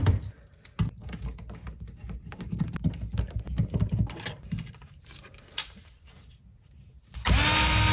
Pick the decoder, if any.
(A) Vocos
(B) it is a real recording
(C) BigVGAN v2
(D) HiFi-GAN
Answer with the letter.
B